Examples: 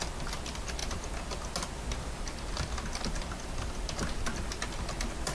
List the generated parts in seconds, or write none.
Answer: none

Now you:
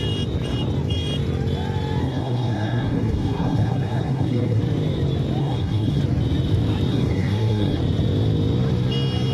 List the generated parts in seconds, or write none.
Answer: 2.0-4.6 (codec, SNAC); 5.4-6.0; 6.9-7.8

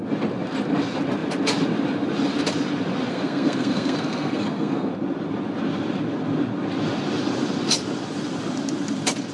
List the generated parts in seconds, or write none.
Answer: 3.1-4.9 (codec, SNAC)

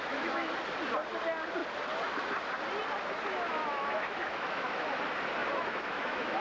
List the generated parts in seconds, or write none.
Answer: 0.0-0.5 (autoencoder, DAC-VAE); 3.6-5.0; 5.4-6.4

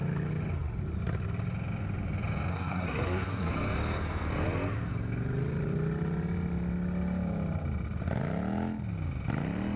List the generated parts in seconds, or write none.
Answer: 2.5-3.5 (codec, SNAC)

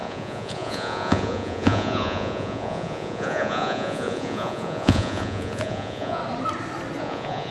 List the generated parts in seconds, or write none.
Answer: 0.0-6.2 (vocoder, Vocos); 7.0-7.5